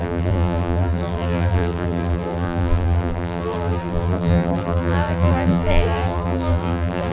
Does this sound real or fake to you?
fake